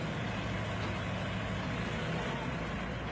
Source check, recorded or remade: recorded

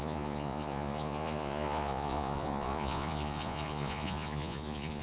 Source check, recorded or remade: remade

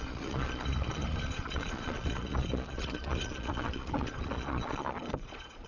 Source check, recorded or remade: remade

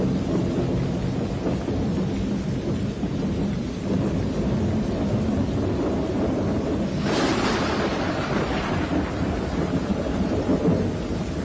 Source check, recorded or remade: recorded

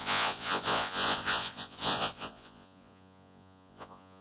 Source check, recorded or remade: remade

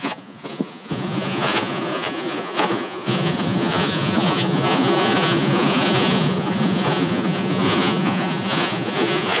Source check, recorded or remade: remade